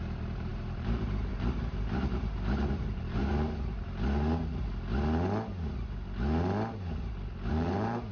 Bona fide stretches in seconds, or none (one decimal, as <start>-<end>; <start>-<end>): 3.3-7.5

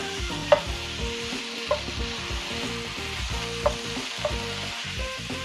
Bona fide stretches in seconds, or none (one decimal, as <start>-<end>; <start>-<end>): 0.0-5.4

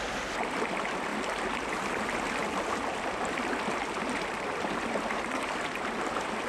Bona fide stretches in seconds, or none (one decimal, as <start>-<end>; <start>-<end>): 0.0-6.5